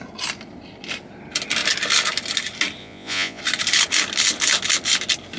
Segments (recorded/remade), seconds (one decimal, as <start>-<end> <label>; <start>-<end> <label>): 0.0-2.8 recorded; 2.8-3.4 remade; 3.4-5.4 recorded